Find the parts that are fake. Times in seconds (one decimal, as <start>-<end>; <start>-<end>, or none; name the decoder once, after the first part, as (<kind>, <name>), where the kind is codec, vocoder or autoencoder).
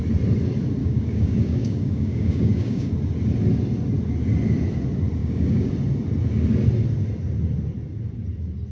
0.8-2.9 (codec, DAC); 5.2-5.7